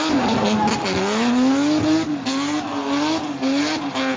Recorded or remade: recorded